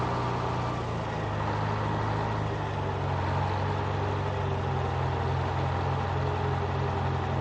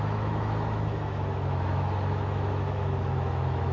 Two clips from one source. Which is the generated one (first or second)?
second